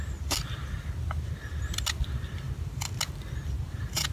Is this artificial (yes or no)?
no